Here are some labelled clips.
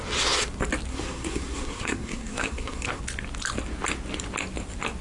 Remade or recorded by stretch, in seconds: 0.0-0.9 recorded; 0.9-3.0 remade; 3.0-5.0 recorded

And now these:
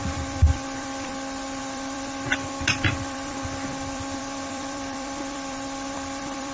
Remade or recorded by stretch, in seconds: 0.0-1.1 remade; 1.1-1.6 recorded; 1.6-6.5 remade

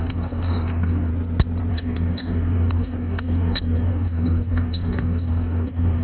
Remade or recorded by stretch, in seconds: 0.0-1.1 remade; 1.1-1.7 recorded; 1.7-6.0 remade

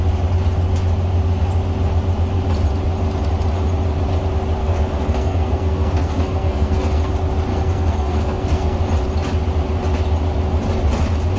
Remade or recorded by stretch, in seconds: 0.0-4.6 recorded; 4.6-7.1 remade; 7.1-7.5 recorded; 7.5-8.8 remade; 8.8-11.4 recorded

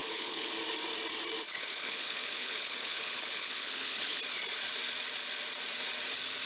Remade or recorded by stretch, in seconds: 0.0-0.5 remade; 0.5-1.5 recorded; 1.5-4.2 remade; 4.2-6.5 recorded

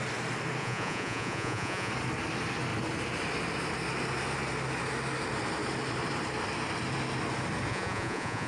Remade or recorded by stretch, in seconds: 0.0-0.6 recorded; 0.6-1.9 remade; 1.9-7.7 recorded; 7.7-8.5 remade